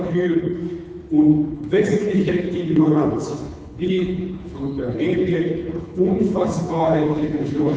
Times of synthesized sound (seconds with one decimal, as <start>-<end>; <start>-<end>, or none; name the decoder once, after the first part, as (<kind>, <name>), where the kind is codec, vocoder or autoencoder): 0.0-0.6 (codec, HILCodec); 1.5-7.8